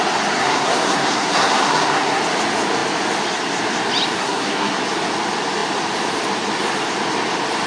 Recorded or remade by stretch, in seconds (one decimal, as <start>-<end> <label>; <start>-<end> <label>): 0.0-0.4 recorded; 0.4-2.2 remade; 2.2-4.2 recorded; 4.2-4.8 remade; 4.8-7.7 recorded